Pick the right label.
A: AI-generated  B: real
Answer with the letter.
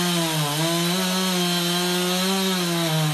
B